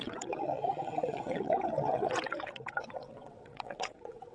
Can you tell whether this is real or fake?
fake